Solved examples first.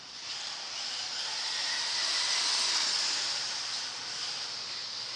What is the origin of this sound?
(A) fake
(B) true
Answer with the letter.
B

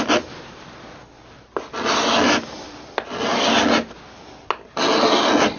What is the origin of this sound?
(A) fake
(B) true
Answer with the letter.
B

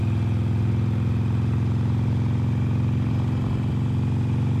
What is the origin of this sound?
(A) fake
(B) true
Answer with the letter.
B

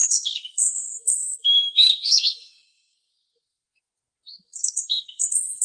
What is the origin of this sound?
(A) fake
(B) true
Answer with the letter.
A